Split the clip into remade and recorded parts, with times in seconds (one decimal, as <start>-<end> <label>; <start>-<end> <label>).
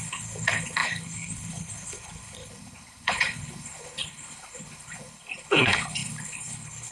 0.0-6.9 remade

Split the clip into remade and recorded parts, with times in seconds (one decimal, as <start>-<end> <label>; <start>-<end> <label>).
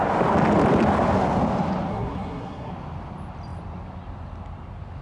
0.0-1.9 recorded; 1.9-2.7 remade; 2.7-5.0 recorded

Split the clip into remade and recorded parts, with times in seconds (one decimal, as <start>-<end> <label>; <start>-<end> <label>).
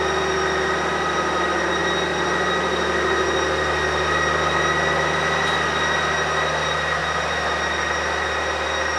0.0-9.0 recorded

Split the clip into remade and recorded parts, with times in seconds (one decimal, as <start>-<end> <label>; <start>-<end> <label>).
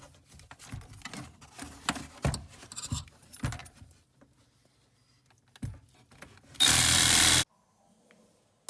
0.0-8.7 recorded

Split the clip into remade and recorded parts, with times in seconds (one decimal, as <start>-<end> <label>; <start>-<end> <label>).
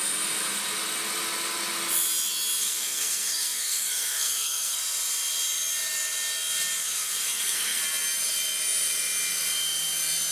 0.0-2.6 recorded; 2.6-4.8 remade; 4.8-6.8 recorded; 6.8-7.8 remade; 7.8-10.3 recorded